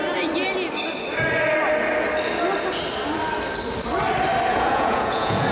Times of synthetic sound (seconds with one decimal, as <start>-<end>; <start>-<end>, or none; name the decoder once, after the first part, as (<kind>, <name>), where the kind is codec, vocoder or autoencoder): 4.5-5.5 (vocoder, Vocos)